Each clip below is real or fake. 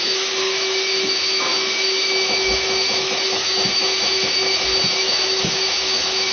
fake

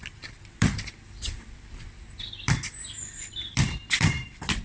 fake